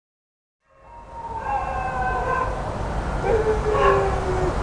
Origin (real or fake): real